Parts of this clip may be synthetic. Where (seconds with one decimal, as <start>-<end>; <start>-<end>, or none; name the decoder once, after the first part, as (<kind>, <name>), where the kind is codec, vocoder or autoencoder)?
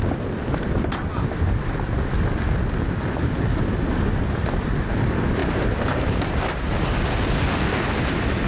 5.4-6.7 (vocoder, BigVGAN v2)